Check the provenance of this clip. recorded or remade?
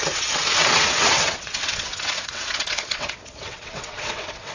remade